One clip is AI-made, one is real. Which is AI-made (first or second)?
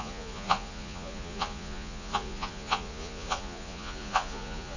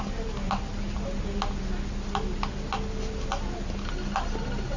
first